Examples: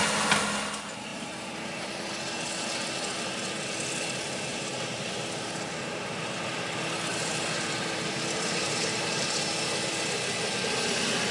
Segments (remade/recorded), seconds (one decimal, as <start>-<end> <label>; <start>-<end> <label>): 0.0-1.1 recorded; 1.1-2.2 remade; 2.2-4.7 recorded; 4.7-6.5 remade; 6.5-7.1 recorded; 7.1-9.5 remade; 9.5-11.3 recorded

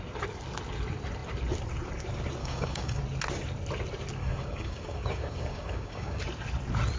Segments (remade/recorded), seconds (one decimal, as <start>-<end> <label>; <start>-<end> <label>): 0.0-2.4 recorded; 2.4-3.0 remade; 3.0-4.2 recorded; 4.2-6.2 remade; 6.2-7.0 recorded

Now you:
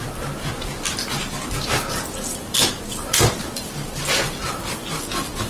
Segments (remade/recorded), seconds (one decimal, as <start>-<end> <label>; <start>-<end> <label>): 0.0-5.5 recorded